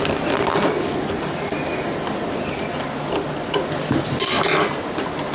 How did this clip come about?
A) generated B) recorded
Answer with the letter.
B